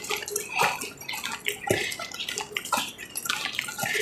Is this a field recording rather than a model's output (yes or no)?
yes